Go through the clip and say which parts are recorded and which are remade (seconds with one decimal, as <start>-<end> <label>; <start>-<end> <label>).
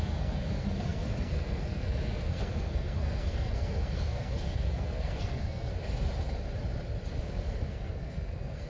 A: 0.0-5.7 remade; 5.7-7.2 recorded; 7.2-8.7 remade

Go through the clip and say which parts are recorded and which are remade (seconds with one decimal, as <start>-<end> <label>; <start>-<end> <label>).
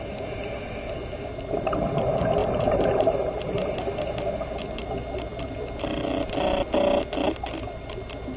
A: 0.0-2.4 recorded; 2.4-3.4 remade; 3.4-8.4 recorded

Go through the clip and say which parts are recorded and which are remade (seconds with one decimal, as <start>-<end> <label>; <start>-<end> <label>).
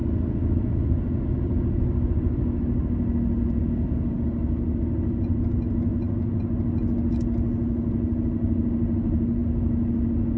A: 0.0-10.4 recorded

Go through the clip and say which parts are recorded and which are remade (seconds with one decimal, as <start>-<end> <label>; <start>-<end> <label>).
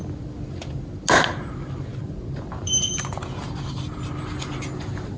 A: 0.0-5.2 recorded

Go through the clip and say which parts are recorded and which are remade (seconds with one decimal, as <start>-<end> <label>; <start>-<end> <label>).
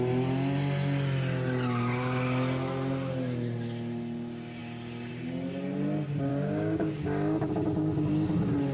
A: 0.0-6.3 recorded; 6.3-7.5 remade; 7.5-8.7 recorded